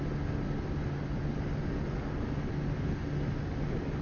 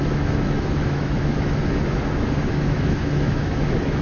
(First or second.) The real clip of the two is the first